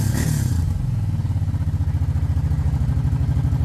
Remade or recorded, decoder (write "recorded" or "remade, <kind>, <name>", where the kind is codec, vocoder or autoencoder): recorded